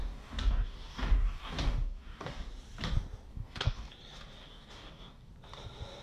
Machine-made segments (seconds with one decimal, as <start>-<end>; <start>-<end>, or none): 0.0-2.5; 3.3-3.9; 4.4-5.3